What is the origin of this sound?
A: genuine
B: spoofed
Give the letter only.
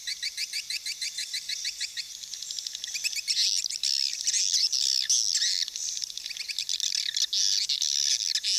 A